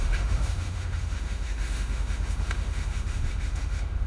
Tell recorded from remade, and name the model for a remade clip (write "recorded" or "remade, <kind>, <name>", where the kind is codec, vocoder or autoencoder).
remade, autoencoder, DAC-VAE